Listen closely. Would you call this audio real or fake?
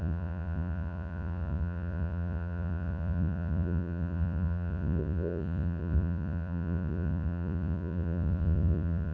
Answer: fake